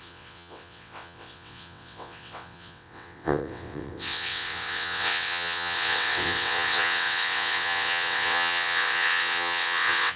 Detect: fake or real fake